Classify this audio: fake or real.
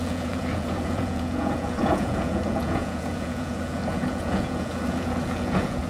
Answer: fake